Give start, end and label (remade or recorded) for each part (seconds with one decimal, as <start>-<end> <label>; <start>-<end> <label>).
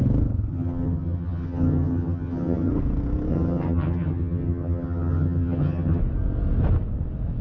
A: 0.0-0.5 recorded; 0.5-2.7 remade; 2.7-3.3 recorded; 3.3-6.0 remade; 6.0-7.4 recorded